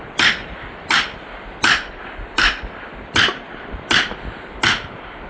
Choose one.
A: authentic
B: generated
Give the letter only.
A